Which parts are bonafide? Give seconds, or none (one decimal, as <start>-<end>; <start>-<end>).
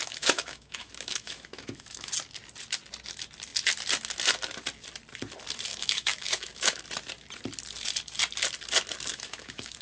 2.1-5.7; 6.8-9.1